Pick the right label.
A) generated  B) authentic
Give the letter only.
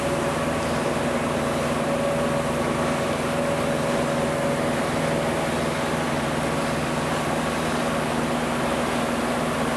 B